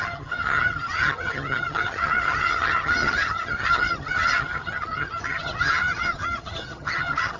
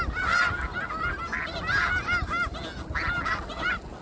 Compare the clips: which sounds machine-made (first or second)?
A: first